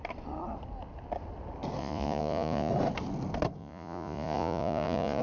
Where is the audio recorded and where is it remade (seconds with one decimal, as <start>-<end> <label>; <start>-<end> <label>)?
0.0-1.8 recorded; 1.8-2.7 remade; 2.7-3.6 recorded; 3.6-5.2 remade